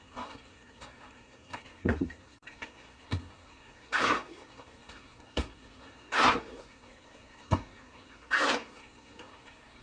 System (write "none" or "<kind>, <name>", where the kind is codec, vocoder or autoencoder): codec, SNAC